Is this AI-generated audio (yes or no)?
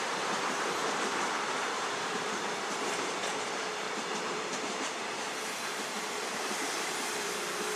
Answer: yes